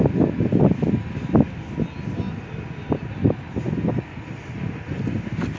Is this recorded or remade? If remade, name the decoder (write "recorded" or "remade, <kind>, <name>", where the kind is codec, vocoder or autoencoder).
recorded